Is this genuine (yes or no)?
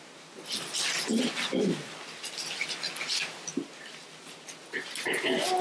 yes